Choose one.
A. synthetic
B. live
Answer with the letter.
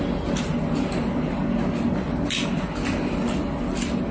B